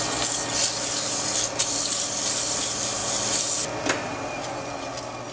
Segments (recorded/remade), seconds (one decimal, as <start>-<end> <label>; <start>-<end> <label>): 0.0-5.3 recorded